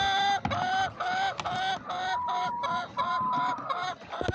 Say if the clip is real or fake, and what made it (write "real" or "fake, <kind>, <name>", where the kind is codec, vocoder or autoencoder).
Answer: real